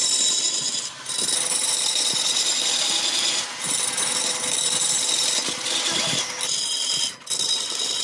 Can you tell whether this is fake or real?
real